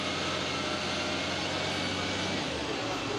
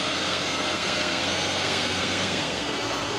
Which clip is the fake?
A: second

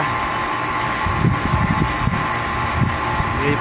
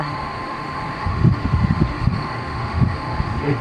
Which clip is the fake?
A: second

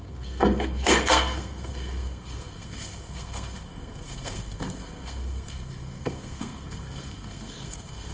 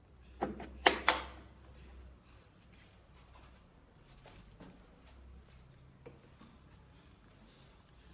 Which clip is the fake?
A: first